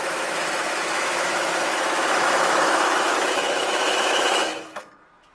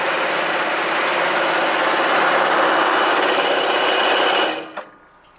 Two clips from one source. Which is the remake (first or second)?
first